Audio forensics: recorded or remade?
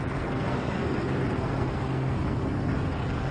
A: remade